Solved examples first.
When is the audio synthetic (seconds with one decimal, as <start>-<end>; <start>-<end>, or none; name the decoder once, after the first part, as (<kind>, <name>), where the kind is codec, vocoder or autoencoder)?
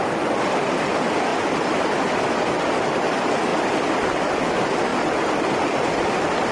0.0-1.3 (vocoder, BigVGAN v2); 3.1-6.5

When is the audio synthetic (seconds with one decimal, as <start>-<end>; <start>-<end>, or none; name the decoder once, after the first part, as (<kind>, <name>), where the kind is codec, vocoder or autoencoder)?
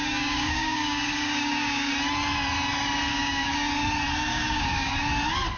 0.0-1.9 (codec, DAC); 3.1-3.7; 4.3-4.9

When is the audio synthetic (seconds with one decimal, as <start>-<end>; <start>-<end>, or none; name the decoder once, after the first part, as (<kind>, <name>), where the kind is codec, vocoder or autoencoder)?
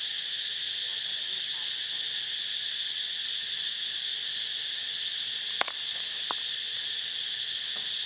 none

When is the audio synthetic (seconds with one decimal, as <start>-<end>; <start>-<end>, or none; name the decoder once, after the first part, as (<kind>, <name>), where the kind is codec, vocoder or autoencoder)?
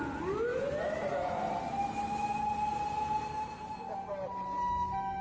none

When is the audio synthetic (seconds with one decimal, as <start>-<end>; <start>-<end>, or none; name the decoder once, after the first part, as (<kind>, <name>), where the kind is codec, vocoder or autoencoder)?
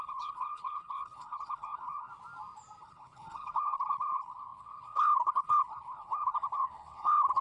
0.0-2.1 (codec, HILCodec); 2.8-7.4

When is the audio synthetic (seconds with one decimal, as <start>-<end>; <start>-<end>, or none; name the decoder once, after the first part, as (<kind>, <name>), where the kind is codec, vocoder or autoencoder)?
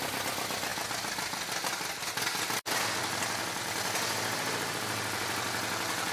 none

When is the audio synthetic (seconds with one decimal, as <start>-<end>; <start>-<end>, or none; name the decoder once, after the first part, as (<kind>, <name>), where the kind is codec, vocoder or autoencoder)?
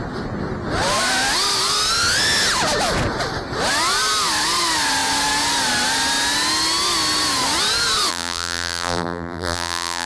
8.1-10.1 (vocoder, BigVGAN v2)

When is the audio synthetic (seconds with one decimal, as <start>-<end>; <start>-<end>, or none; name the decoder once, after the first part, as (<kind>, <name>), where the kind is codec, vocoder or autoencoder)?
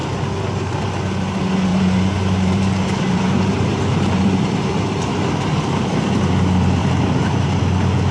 1.7-5.3 (vocoder, BigVGAN v2); 6.8-7.6